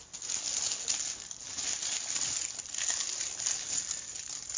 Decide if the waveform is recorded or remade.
recorded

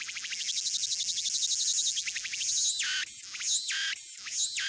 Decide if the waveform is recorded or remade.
recorded